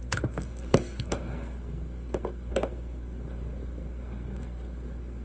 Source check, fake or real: fake